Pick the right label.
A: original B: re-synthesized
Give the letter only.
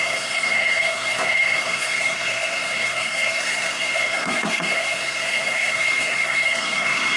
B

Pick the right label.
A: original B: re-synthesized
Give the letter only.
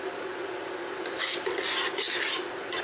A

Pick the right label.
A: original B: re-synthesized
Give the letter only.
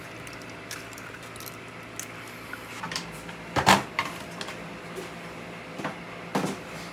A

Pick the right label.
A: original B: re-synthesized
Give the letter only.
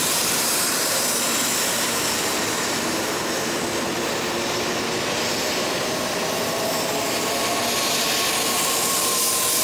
A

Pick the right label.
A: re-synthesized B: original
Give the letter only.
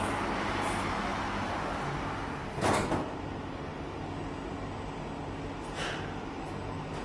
B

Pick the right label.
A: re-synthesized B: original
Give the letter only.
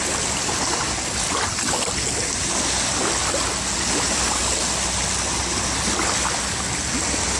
B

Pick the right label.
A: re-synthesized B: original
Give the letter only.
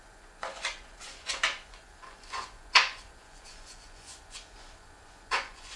A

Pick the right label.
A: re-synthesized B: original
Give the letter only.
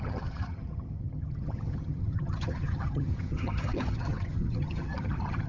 A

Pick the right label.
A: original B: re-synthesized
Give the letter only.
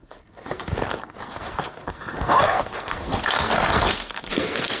B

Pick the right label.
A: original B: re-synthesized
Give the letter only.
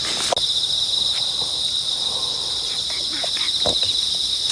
A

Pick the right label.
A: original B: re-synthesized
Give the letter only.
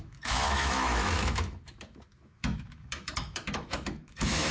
B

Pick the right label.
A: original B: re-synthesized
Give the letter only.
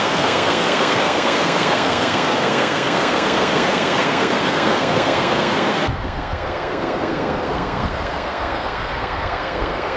B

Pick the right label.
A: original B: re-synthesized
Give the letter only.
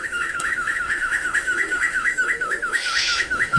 B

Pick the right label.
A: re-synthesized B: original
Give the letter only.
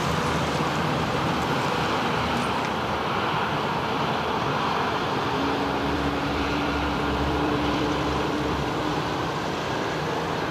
A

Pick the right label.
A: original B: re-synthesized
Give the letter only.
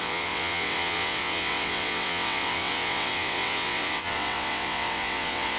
B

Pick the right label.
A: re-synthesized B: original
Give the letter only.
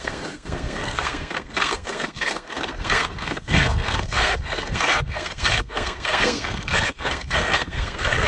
A